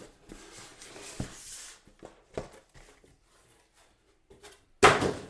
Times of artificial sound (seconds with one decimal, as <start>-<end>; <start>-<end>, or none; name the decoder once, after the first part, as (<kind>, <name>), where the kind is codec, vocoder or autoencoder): none